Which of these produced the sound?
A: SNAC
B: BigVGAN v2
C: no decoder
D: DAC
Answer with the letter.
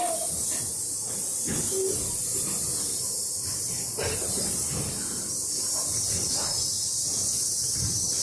C